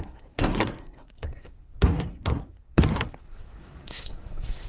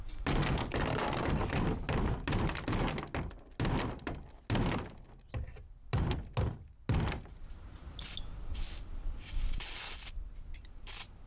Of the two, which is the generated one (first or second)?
first